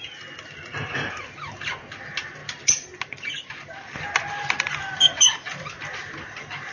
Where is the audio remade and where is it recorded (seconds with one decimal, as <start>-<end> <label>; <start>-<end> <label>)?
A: 0.0-6.7 recorded